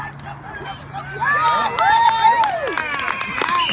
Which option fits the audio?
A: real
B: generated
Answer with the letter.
A